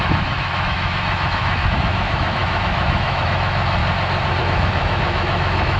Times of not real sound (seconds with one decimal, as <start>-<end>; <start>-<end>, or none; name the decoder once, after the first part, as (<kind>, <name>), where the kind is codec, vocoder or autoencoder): 0.0-3.8 (autoencoder, DAC-VAE); 4.4-5.8